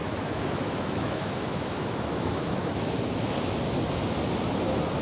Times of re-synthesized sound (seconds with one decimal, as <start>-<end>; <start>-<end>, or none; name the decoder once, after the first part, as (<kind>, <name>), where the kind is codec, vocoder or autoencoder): 0.0-3.0 (autoencoder, DAC-VAE)